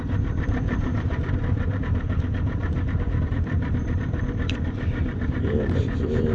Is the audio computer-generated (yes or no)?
yes